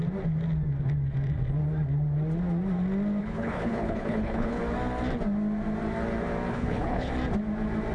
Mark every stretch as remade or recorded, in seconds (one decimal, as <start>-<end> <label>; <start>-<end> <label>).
0.0-3.2 recorded; 3.2-4.6 remade; 4.6-6.5 recorded; 6.5-7.1 remade; 7.1-7.9 recorded

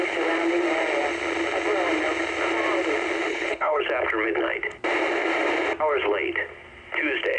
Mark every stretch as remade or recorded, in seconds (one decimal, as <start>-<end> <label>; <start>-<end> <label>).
0.0-3.3 recorded; 3.3-3.8 remade; 3.8-7.4 recorded